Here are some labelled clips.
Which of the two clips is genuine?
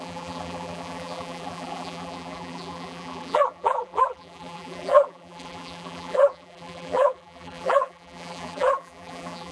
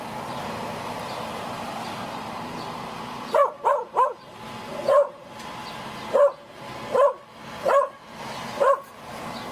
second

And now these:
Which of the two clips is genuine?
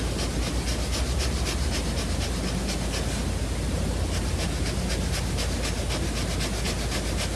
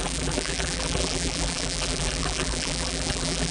first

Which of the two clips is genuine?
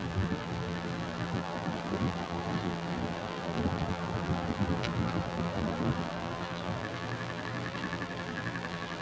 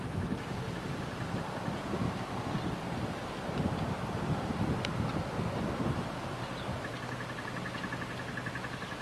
second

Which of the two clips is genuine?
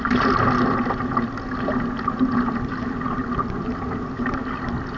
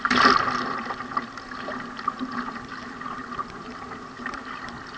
first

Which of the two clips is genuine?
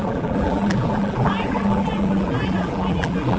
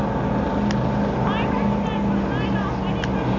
second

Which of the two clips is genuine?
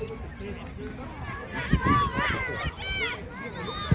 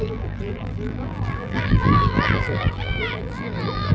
first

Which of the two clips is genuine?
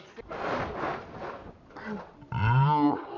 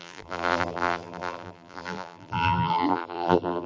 first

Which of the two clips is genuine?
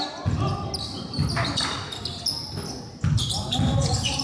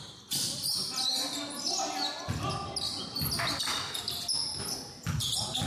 second